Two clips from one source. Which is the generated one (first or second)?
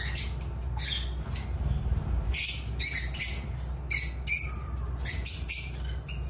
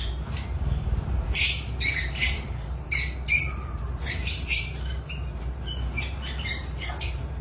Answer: second